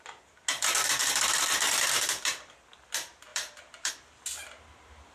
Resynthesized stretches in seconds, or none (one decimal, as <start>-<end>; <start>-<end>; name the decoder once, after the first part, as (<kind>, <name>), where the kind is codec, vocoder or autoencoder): 1.0-2.3 (vocoder, BigVGAN v2); 3.3-3.9